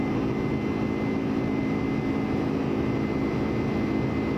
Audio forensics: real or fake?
real